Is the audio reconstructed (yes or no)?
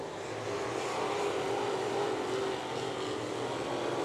no